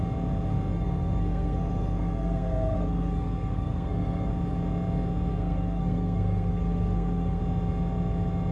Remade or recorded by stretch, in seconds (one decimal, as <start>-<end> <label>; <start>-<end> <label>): 0.0-0.7 recorded; 0.7-4.3 remade; 4.3-5.3 recorded; 5.3-7.4 remade; 7.4-8.5 recorded